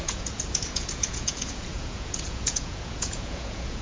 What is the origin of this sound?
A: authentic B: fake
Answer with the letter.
B